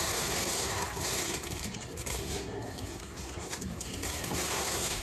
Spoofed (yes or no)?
yes